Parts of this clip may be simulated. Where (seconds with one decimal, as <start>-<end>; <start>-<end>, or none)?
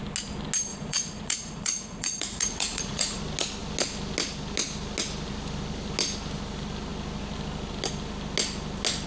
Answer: 0.7-3.2